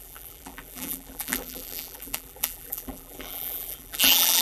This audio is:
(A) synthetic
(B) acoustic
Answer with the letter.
A